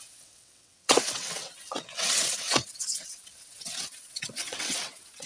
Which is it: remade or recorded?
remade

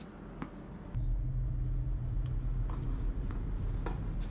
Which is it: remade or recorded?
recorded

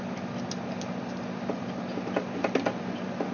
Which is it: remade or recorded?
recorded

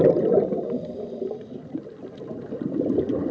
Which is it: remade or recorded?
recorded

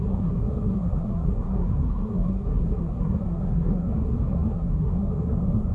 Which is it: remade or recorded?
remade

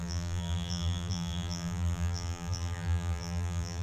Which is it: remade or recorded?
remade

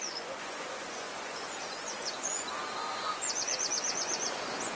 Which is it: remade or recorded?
remade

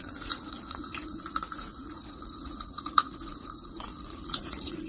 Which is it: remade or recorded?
remade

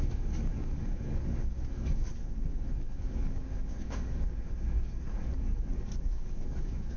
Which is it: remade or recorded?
remade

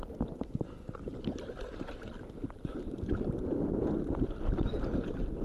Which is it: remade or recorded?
recorded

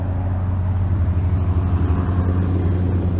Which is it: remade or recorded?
recorded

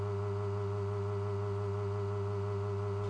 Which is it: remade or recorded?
recorded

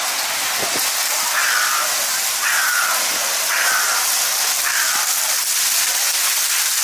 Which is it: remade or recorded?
recorded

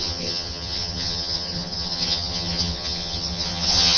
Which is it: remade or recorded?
remade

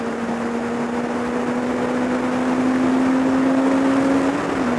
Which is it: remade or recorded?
recorded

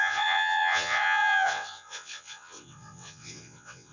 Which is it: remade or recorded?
remade